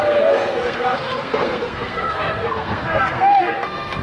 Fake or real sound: fake